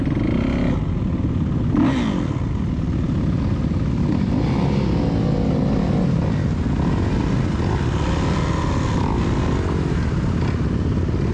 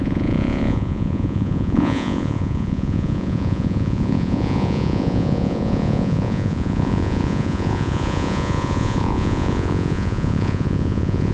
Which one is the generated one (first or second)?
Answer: second